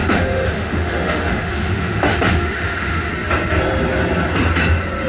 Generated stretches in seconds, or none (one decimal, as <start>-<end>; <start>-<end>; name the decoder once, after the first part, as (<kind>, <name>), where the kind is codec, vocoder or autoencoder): 0.0-3.1 (autoencoder, DAC-VAE)